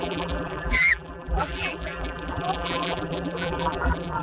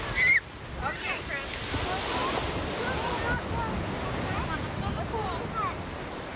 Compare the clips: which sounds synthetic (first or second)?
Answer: first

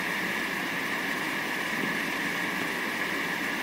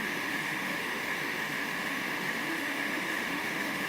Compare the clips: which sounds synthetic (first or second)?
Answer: second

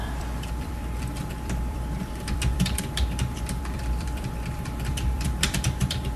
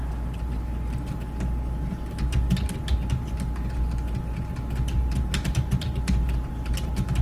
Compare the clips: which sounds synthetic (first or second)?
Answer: first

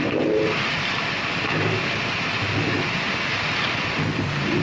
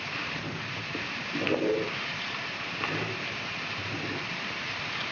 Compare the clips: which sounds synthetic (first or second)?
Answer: second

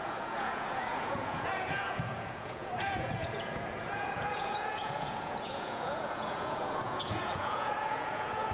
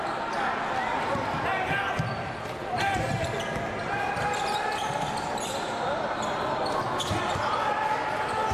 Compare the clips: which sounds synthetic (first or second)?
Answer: first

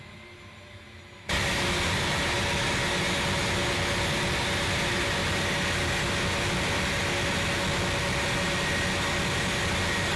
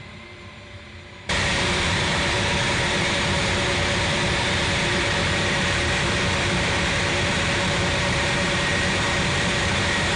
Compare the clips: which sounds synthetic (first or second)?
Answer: second